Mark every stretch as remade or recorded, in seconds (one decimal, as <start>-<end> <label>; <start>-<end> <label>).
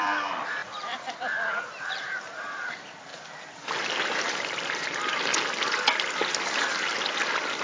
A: 0.0-3.1 remade; 3.1-4.3 recorded; 4.3-5.3 remade; 5.3-7.6 recorded